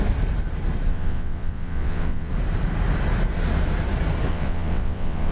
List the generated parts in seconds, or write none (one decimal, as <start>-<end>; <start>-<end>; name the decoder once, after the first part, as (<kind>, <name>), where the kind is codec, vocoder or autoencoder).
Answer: 0.9-2.3 (vocoder, WaveNeXt); 4.3-5.3